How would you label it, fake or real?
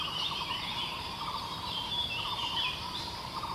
fake